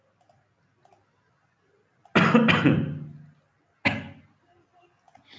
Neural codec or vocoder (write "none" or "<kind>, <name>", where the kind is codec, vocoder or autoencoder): none